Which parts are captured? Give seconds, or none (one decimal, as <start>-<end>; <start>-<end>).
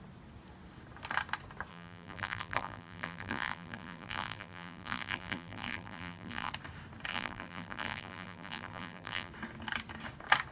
0.0-1.7; 6.5-7.1; 9.3-10.5